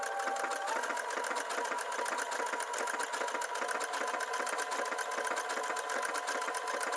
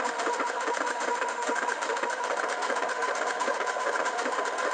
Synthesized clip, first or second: second